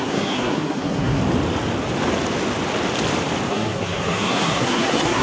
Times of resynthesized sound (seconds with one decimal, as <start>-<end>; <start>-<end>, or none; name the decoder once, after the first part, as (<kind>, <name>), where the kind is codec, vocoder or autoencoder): 0.0-1.2 (codec, SNAC); 3.5-5.2